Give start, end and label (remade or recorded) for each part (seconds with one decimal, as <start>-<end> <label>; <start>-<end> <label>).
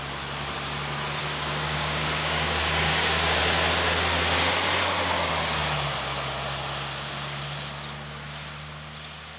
0.0-1.2 recorded; 1.2-3.4 remade; 3.4-9.4 recorded